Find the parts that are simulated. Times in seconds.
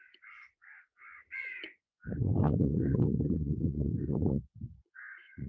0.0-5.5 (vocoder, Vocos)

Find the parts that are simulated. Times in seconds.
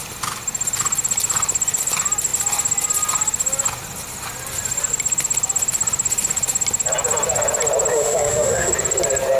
7.9-8.7 (autoencoder, DAC-VAE)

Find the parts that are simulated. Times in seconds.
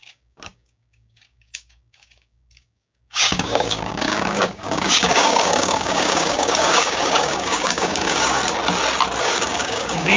0.0-8.4 (codec, DAC); 9.2-10.2